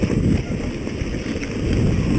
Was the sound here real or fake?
real